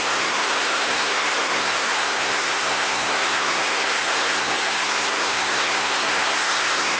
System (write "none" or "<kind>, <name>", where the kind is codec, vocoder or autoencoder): codec, SNAC